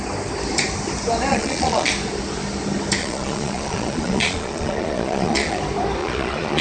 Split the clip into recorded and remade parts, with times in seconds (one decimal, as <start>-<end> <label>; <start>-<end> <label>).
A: 0.0-1.3 recorded; 1.3-1.9 remade; 1.9-3.0 recorded; 3.0-5.6 remade; 5.6-6.0 recorded; 6.0-6.6 remade